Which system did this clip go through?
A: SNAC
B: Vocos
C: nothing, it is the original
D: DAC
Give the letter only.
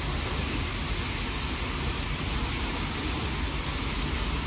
C